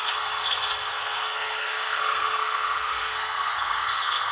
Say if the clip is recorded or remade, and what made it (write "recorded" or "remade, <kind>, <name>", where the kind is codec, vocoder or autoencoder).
remade, codec, SNAC